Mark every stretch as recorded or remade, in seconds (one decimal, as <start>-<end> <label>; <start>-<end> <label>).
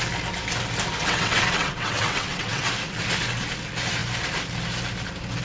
0.0-1.0 recorded; 1.0-2.7 remade; 2.7-5.4 recorded